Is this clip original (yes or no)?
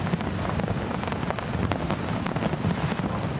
yes